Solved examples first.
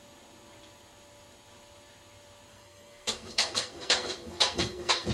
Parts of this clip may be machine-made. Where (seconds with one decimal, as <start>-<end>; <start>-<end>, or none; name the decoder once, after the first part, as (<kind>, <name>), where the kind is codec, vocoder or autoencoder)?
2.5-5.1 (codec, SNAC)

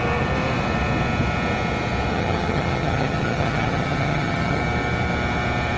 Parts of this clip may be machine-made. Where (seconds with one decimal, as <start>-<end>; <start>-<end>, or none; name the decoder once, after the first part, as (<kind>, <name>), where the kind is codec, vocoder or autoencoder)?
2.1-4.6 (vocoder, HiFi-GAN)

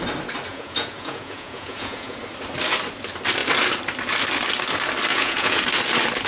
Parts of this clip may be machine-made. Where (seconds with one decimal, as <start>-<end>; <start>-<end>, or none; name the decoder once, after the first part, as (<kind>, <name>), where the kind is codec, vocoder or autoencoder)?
0.5-2.2 (vocoder, Vocos); 5.1-5.6

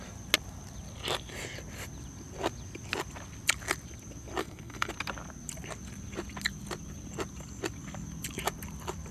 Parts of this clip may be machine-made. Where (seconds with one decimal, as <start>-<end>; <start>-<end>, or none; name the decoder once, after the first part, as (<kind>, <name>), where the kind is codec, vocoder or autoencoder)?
4.4-4.9 (codec, SNAC)

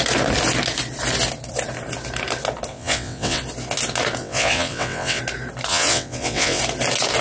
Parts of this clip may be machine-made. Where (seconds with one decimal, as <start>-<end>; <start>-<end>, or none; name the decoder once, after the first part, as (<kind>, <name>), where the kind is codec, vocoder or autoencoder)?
2.7-3.4 (vocoder, WaveNeXt); 4.2-5.2; 5.7-6.6

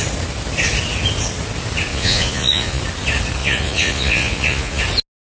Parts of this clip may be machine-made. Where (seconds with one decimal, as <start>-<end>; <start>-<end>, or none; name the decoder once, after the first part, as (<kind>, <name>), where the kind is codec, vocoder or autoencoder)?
1.9-2.8 (vocoder, Vocos); 3.4-4.8

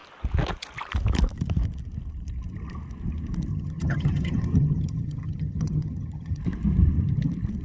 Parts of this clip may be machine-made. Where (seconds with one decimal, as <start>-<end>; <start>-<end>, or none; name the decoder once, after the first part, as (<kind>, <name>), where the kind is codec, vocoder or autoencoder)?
3.5-6.4 (vocoder, HiFi-GAN)

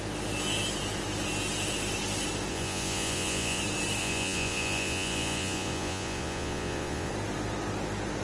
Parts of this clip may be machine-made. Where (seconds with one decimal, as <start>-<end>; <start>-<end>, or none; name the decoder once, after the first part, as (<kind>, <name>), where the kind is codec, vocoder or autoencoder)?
2.5-3.6 (vocoder, Vocos); 4.0-7.1